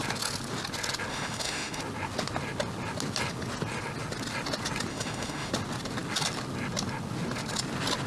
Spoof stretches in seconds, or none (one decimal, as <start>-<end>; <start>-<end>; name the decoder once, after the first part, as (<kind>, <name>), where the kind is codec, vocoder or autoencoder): 1.1-1.8 (autoencoder, DAC-VAE); 4.9-5.5